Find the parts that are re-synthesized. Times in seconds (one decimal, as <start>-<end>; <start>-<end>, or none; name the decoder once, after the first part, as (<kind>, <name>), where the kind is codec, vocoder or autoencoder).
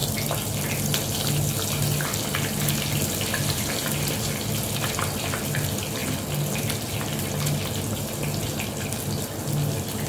none